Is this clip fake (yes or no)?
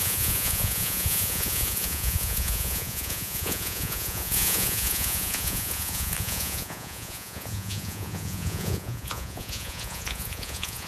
yes